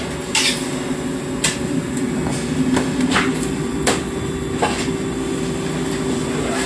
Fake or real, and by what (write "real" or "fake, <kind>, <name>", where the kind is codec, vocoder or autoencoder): real